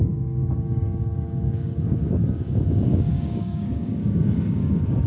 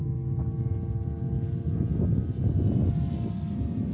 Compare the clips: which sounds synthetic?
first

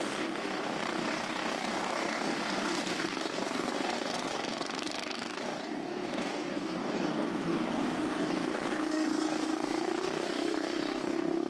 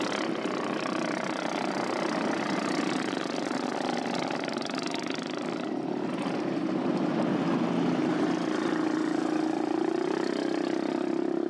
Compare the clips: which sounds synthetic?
first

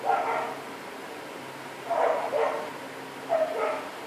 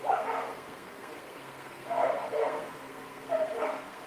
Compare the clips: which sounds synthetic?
second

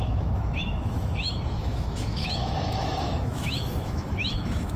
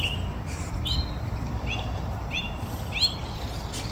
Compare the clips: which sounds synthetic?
first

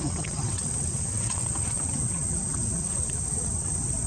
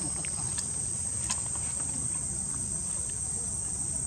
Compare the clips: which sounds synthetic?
first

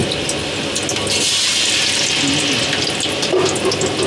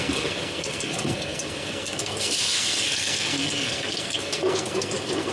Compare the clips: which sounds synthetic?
second